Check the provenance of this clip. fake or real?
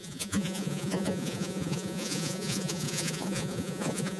fake